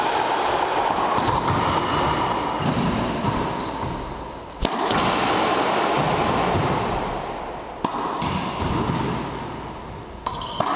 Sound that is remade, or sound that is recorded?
recorded